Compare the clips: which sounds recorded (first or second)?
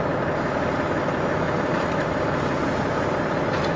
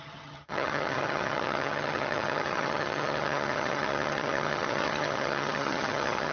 first